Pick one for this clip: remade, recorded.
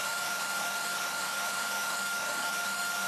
remade